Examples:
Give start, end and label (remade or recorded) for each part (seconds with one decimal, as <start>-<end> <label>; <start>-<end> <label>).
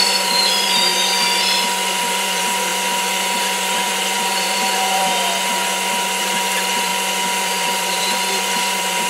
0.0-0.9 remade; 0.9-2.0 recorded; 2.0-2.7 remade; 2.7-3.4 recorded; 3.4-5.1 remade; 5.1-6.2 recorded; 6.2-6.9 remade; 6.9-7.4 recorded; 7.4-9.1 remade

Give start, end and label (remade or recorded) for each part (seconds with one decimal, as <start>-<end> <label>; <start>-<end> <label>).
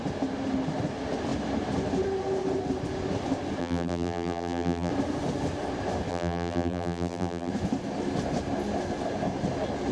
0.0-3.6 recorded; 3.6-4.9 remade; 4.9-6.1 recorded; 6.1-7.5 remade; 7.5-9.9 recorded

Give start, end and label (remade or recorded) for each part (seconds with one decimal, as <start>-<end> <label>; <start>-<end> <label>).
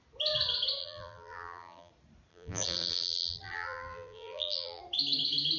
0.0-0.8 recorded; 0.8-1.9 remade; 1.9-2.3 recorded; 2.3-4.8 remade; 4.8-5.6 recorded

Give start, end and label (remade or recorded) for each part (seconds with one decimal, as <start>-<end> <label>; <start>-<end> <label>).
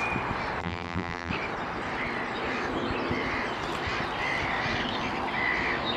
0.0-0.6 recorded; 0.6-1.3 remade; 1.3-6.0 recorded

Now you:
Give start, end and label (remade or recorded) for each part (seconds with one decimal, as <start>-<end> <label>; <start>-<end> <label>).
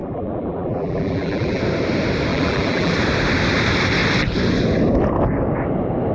0.0-1.6 remade; 1.6-2.3 recorded; 2.3-2.9 remade; 2.9-6.1 recorded